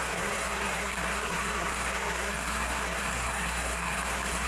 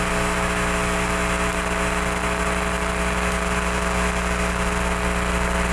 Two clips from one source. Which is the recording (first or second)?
second